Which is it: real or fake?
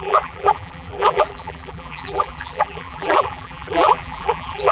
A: fake